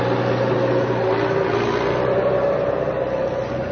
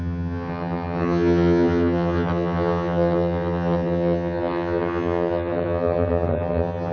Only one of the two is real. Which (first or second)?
first